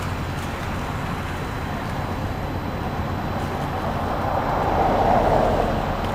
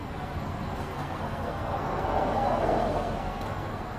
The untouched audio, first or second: first